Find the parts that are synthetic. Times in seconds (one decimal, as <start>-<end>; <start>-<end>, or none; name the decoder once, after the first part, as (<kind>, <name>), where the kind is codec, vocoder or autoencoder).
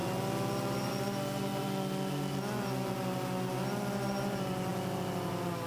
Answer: none